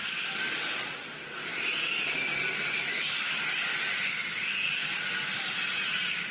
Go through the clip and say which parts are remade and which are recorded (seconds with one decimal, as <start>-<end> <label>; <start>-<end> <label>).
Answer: 0.0-1.5 remade; 1.5-2.4 recorded; 2.4-3.7 remade; 3.7-6.3 recorded